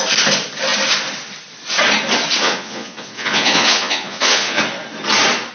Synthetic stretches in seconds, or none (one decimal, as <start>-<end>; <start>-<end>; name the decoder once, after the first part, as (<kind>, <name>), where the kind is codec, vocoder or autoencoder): 2.4-4.6 (vocoder, Vocos)

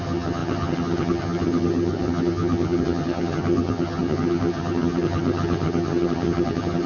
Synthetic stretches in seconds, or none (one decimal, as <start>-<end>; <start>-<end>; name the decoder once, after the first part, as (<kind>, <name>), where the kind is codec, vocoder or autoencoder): 0.0-6.9 (vocoder, HiFi-GAN)